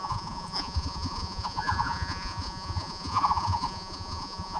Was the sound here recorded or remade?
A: remade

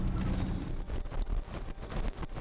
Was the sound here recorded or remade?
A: recorded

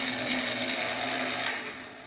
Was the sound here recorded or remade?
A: recorded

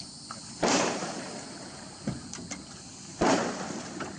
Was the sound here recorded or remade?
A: recorded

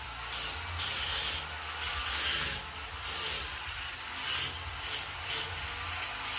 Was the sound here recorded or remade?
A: recorded